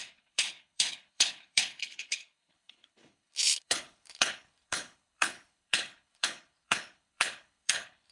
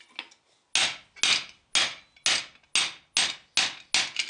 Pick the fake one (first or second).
first